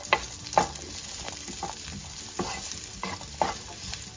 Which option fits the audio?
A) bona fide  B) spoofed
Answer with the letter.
A